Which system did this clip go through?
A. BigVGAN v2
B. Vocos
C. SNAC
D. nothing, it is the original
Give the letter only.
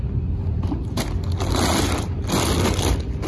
D